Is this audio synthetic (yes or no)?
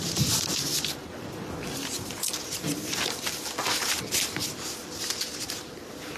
yes